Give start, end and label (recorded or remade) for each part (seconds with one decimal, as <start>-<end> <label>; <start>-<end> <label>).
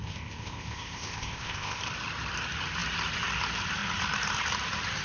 0.0-1.8 remade; 1.8-5.0 recorded